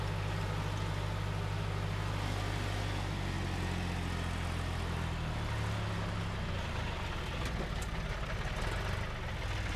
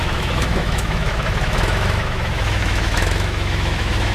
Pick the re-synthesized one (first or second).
second